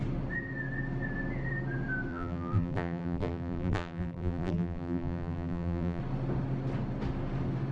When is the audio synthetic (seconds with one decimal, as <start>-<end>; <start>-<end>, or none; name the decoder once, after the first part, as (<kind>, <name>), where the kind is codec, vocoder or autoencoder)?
2.1-6.0 (vocoder, BigVGAN v2)